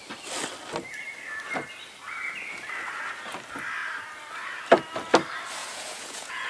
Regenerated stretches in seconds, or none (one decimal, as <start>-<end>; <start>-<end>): 5.6-6.5